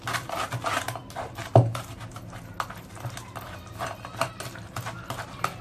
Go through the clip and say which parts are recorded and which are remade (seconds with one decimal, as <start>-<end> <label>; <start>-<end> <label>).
0.0-5.6 recorded